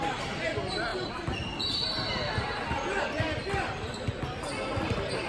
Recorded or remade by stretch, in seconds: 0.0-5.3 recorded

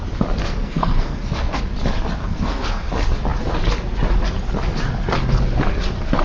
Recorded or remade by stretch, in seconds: 0.0-0.4 recorded; 0.4-1.6 remade; 1.6-2.2 recorded; 2.2-2.9 remade; 2.9-6.2 recorded